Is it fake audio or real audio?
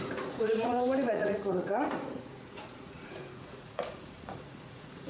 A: fake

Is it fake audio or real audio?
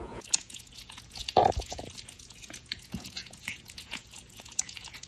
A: fake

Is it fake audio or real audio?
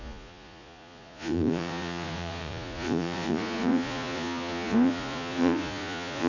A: fake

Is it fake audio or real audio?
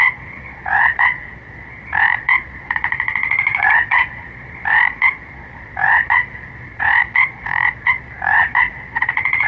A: fake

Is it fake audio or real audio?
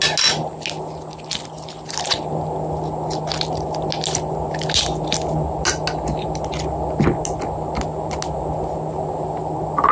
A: real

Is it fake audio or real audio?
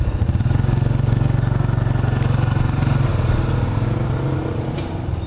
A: real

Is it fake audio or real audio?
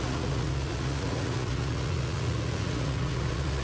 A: fake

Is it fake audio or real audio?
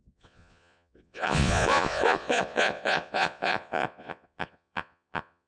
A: fake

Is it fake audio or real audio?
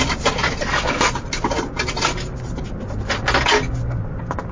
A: real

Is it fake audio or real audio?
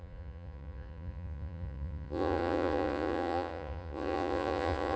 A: fake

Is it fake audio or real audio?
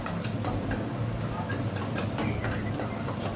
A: real